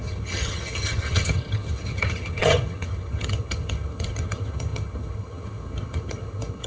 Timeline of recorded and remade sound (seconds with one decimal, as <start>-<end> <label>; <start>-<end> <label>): 0.0-6.7 remade